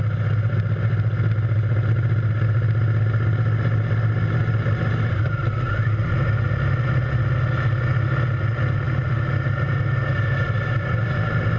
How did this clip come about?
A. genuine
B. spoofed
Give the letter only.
A